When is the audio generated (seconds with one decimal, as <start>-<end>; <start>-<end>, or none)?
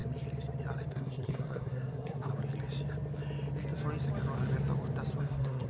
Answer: 0.9-2.3; 5.2-5.7